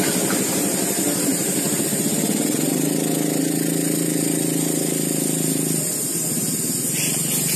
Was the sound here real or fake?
real